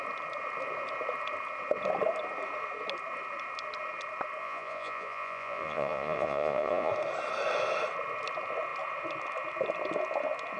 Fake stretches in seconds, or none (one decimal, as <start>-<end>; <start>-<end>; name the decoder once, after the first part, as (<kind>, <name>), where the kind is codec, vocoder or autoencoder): 4.4-6.9 (vocoder, Vocos)

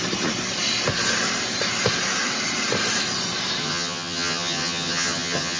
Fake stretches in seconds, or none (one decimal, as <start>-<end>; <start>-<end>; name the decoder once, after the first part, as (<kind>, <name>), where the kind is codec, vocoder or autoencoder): 3.6-5.6 (vocoder, HiFi-GAN)

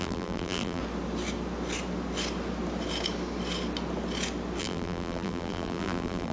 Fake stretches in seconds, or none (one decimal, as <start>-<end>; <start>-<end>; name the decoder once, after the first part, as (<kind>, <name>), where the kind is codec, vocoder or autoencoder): 0.0-0.8 (vocoder, BigVGAN v2); 4.6-6.3